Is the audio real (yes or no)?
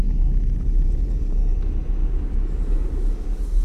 yes